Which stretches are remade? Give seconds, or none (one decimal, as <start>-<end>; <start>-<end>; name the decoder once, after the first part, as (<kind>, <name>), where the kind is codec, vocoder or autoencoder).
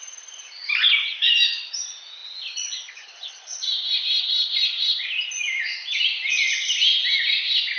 none